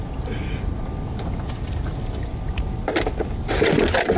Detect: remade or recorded recorded